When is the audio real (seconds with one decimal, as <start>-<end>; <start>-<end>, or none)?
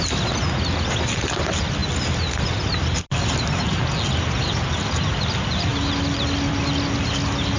0.0-7.6